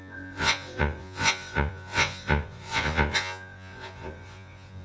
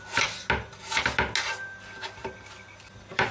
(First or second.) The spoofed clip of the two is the first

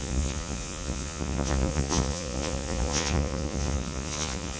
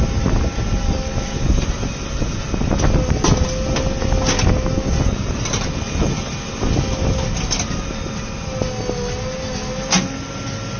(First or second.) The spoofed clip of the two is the first